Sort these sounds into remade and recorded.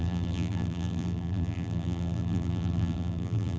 remade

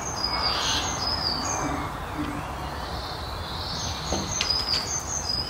recorded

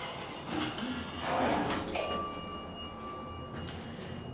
recorded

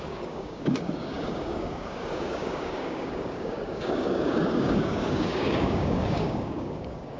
remade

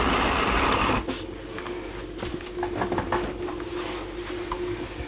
recorded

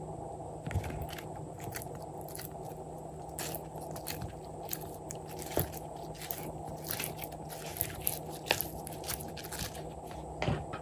recorded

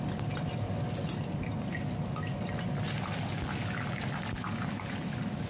recorded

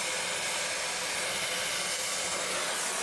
recorded